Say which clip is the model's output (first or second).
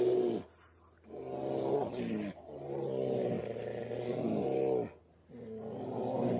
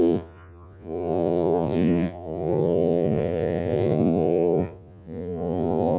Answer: second